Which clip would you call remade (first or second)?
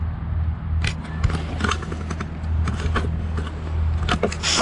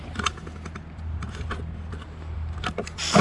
second